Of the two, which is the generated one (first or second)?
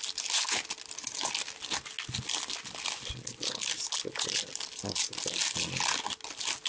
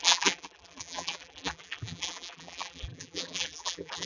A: second